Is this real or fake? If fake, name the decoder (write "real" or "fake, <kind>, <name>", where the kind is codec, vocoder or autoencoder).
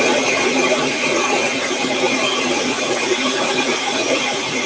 fake, vocoder, Vocos